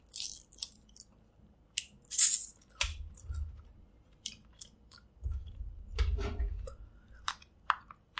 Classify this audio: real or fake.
real